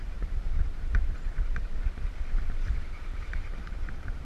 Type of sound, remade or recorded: remade